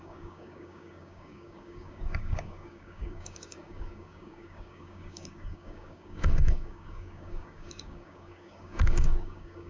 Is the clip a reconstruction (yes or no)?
yes